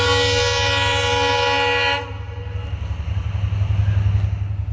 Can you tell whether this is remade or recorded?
recorded